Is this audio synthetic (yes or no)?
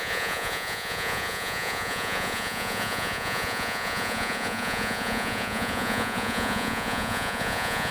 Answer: yes